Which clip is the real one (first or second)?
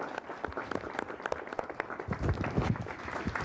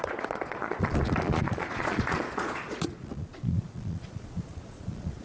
first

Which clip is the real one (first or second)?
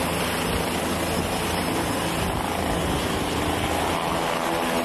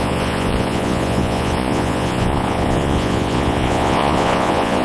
first